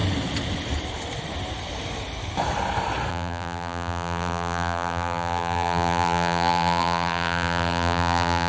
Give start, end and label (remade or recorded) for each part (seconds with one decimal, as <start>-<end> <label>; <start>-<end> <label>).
0.0-3.1 recorded; 3.1-8.5 remade

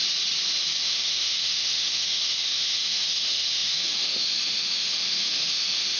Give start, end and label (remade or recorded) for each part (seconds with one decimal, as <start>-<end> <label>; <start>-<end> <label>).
0.0-0.8 recorded; 0.8-6.0 remade

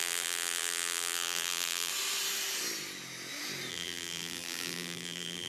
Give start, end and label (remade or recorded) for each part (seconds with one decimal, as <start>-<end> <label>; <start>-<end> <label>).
0.0-1.9 remade; 1.9-3.7 recorded; 3.7-5.5 remade

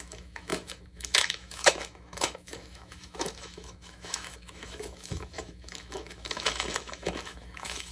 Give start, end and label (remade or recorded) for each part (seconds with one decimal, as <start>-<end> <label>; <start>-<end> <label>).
0.0-7.9 remade

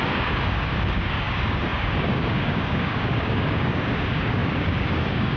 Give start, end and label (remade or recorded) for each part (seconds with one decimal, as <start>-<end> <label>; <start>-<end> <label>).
0.0-5.4 remade